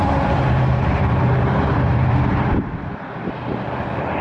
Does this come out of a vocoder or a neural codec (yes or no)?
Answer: yes